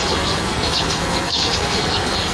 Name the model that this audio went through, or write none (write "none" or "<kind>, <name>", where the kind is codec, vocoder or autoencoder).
codec, SNAC